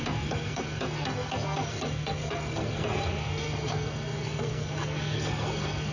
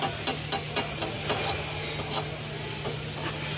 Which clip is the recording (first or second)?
second